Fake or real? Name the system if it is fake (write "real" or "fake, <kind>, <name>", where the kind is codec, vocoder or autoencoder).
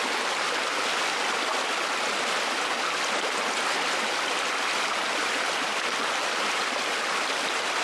real